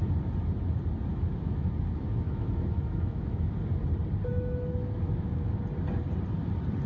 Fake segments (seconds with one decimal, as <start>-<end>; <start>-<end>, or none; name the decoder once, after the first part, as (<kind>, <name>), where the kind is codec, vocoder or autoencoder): 1.1-3.5 (autoencoder, DAC-VAE); 4.3-5.6